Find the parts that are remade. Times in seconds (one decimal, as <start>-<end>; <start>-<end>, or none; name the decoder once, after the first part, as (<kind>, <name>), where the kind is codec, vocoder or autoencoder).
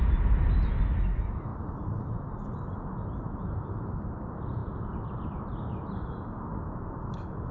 none